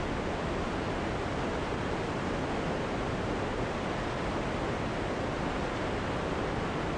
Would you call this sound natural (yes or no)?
yes